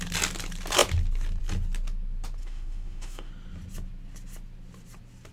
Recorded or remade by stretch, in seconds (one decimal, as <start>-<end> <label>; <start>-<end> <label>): 0.0-2.4 recorded; 2.4-3.3 remade; 3.3-5.3 recorded